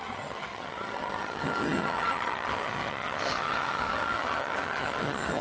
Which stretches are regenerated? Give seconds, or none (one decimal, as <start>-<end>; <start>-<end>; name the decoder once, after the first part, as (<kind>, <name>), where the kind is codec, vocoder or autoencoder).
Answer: 0.0-5.4 (vocoder, HiFi-GAN)